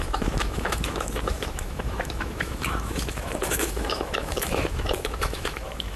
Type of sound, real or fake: fake